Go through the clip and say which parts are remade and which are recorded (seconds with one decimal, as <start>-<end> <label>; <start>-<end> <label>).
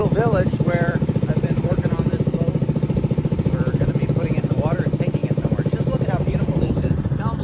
0.0-4.4 remade; 4.4-7.4 recorded